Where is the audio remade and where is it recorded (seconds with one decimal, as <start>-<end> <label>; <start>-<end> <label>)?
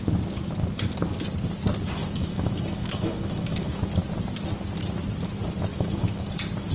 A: 0.0-2.0 recorded; 2.0-3.8 remade; 3.8-5.7 recorded; 5.7-6.2 remade; 6.2-6.7 recorded